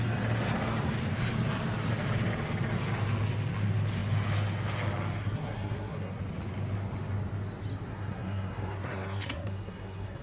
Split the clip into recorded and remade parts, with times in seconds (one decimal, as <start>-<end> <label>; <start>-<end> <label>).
0.0-5.2 recorded; 5.2-6.2 remade; 6.2-7.9 recorded; 7.9-10.2 remade